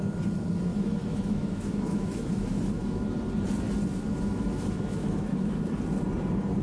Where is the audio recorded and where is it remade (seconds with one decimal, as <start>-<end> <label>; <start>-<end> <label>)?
0.0-0.7 recorded; 0.7-3.0 remade; 3.0-3.9 recorded; 3.9-5.6 remade; 5.6-6.6 recorded